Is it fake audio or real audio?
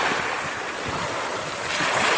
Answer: real